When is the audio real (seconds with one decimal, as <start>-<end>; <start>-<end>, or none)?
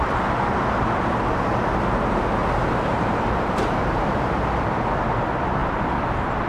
0.0-2.4; 4.4-6.5